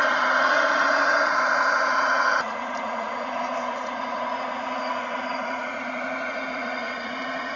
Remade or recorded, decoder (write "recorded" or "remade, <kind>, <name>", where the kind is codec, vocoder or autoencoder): remade, vocoder, Vocos